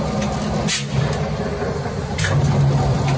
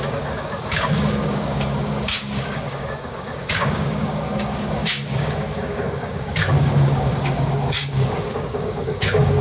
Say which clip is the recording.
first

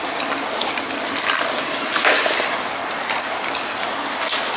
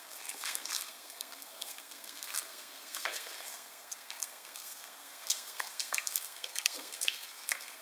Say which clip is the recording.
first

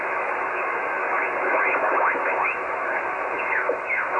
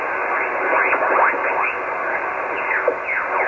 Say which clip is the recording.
second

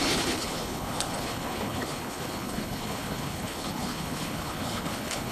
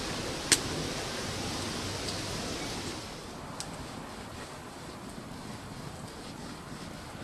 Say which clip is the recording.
second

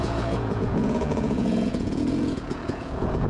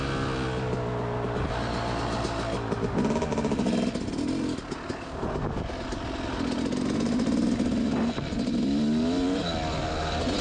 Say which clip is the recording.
second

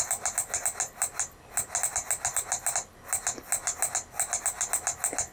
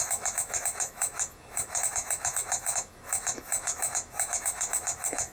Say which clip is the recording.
first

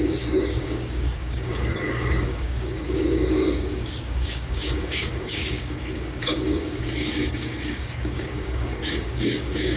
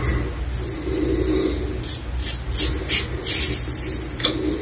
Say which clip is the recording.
second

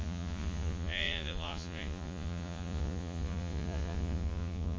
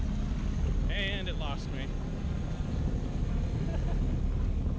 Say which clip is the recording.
second